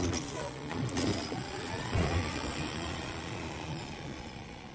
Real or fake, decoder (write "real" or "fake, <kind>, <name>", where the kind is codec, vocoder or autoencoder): fake, vocoder, Vocos